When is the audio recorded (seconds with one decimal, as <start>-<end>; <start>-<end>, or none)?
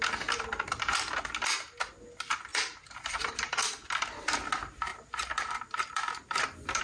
0.0-2.5; 3.6-4.9